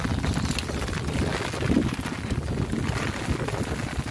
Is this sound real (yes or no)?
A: yes